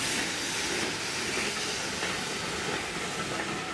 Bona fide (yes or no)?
yes